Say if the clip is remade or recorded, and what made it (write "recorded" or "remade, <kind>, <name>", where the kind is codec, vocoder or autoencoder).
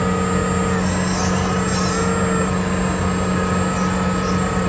recorded